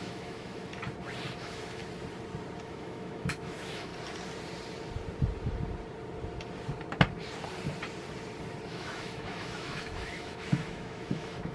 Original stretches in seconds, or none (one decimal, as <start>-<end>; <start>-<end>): 0.7-1.4; 1.8-2.6; 3.9-8.7